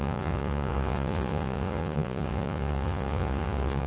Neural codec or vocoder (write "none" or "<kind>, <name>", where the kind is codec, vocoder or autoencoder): vocoder, Vocos